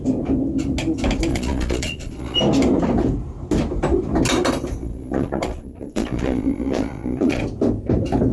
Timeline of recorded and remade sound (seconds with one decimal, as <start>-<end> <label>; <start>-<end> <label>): 0.0-1.3 recorded; 1.3-2.4 remade; 2.4-4.8 recorded; 4.8-7.4 remade; 7.4-8.3 recorded